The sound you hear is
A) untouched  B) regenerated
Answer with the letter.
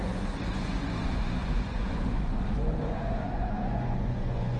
B